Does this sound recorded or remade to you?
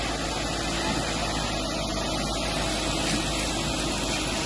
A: recorded